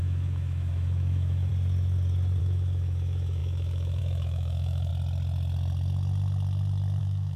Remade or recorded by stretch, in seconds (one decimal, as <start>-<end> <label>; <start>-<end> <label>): 0.0-1.5 remade; 1.5-2.4 recorded; 2.4-4.9 remade; 4.9-7.0 recorded; 7.0-7.4 remade